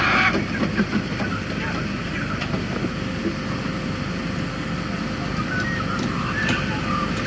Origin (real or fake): real